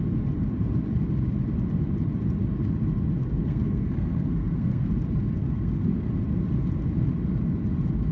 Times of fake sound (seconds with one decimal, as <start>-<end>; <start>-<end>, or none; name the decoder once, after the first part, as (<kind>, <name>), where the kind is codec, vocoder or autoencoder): 3.2-4.9 (codec, SNAC); 5.4-6.1